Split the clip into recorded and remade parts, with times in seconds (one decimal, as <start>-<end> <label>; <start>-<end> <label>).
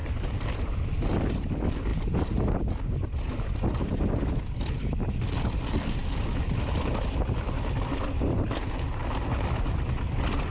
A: 0.0-1.1 remade; 1.1-10.5 recorded